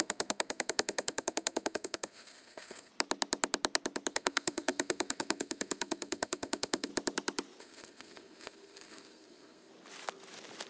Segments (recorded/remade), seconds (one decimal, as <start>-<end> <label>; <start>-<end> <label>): 0.0-2.9 remade; 2.9-4.1 recorded; 4.1-6.9 remade; 6.9-7.6 recorded; 7.6-9.7 remade; 9.7-10.7 recorded